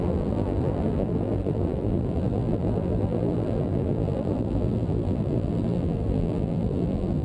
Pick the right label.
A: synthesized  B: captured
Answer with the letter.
A